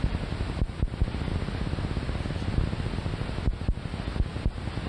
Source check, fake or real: real